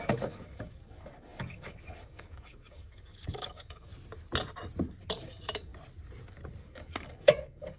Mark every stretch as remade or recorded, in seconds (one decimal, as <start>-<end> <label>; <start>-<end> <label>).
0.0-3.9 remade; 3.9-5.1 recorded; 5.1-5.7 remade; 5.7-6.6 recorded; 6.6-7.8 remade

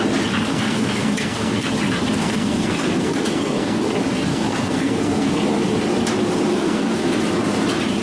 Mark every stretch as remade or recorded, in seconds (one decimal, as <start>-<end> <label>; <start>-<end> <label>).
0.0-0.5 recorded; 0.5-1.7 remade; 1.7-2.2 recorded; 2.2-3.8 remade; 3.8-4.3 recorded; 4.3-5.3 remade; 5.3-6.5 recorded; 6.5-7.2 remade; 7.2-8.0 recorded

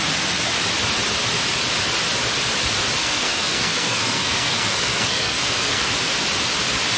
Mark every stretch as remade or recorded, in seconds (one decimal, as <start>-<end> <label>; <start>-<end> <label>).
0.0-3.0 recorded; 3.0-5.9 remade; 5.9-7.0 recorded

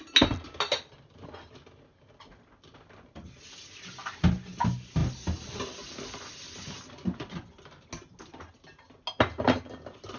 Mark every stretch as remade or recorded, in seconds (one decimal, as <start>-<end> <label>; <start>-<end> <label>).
0.0-10.2 recorded

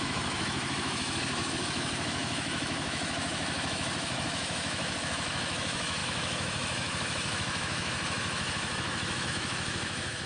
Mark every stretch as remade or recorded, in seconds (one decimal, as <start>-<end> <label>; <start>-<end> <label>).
0.0-10.3 remade